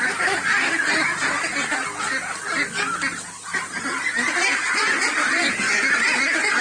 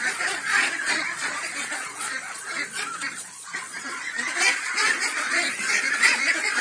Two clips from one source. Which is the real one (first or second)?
first